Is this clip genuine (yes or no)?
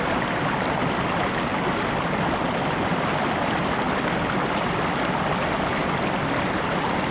yes